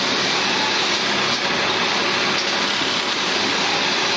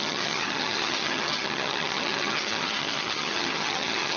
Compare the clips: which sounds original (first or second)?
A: first